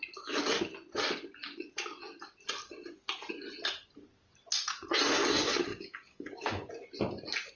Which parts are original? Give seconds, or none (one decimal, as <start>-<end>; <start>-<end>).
0.0-5.7; 6.7-7.6